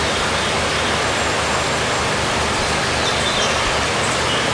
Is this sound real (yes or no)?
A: yes